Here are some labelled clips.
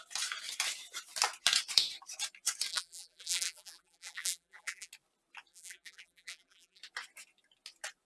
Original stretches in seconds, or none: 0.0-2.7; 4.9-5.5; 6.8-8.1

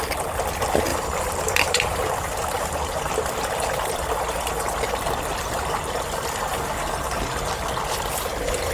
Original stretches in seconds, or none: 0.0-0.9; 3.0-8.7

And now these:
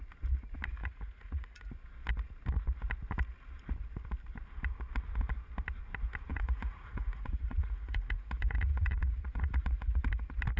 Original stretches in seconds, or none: 0.0-0.8; 1.7-6.3; 10.0-10.6

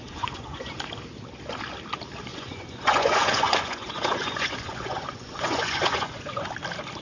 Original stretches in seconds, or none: 0.7-2.3; 6.5-7.0

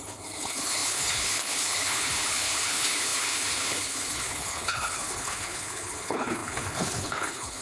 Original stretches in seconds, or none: none

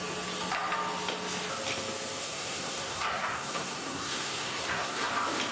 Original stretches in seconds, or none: 0.0-2.2; 5.1-5.5